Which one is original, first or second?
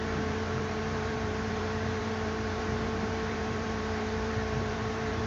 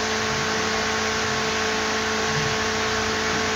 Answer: second